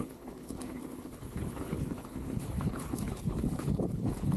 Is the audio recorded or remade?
remade